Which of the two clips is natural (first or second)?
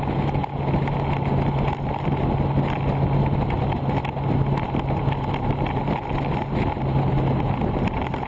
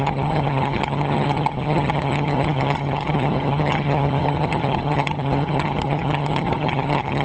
first